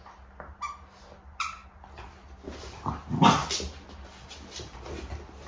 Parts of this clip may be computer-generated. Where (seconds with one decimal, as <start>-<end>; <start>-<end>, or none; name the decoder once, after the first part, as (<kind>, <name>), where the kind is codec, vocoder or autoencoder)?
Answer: none